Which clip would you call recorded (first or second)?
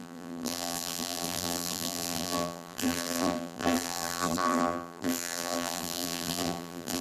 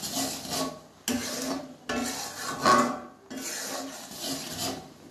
second